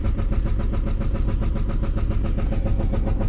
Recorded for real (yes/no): yes